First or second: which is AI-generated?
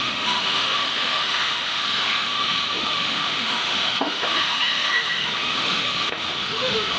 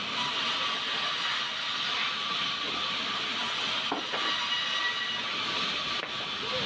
first